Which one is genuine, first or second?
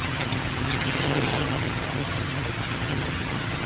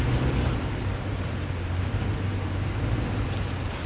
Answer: second